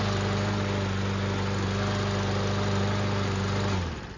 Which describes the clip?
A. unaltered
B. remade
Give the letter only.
A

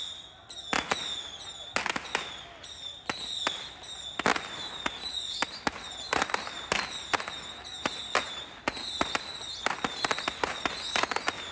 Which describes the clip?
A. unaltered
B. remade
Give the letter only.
A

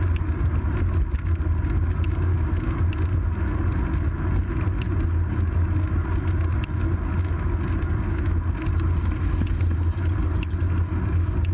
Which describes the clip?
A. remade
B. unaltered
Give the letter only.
B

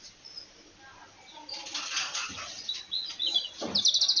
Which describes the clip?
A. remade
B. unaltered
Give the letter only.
B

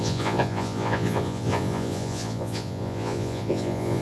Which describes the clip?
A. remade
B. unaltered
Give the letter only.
A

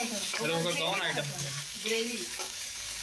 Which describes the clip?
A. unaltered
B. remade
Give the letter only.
B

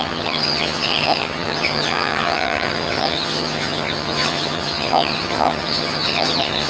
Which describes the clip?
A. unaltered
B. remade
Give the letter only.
B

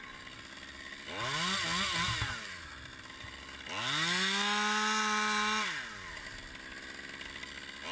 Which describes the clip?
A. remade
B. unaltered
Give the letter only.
B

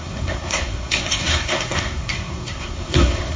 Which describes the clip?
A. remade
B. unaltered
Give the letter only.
A